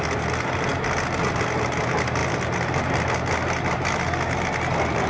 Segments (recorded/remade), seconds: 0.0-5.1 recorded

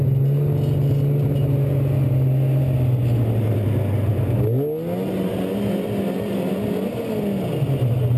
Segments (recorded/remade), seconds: 0.0-8.2 recorded

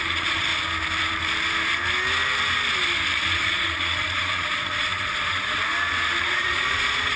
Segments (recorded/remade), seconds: 0.0-0.5 remade; 0.5-3.3 recorded; 3.3-5.6 remade; 5.6-6.2 recorded; 6.2-7.2 remade

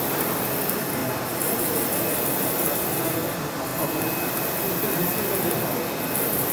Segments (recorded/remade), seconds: 0.0-6.5 recorded